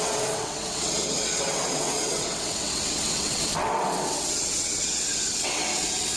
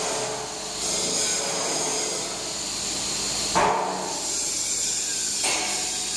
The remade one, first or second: first